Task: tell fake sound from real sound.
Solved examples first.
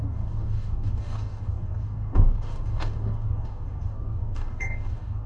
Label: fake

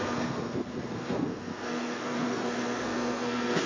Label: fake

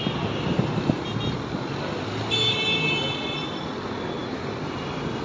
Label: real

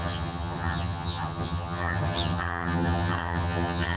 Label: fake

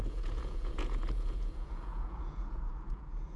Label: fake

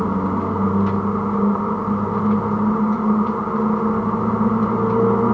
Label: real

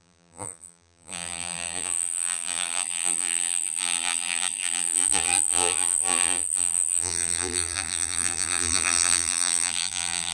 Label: fake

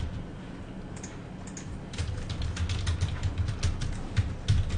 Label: real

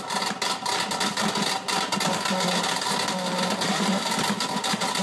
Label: real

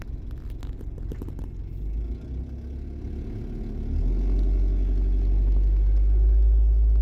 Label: real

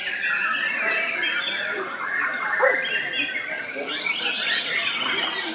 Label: real